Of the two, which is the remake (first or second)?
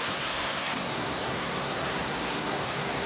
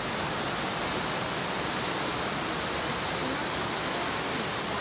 first